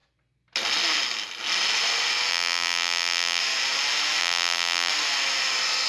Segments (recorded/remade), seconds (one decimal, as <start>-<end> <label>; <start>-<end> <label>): 0.0-2.3 recorded; 2.3-3.4 remade; 3.4-4.2 recorded; 4.2-4.9 remade; 4.9-5.9 recorded